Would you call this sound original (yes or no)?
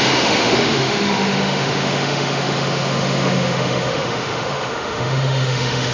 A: no